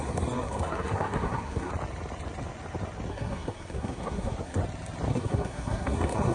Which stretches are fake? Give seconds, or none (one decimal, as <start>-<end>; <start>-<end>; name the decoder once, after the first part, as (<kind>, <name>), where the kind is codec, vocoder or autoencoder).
0.0-1.7 (codec, SNAC); 3.1-4.6; 5.1-6.3